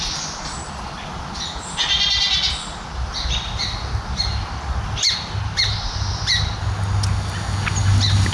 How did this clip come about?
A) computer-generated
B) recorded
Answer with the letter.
B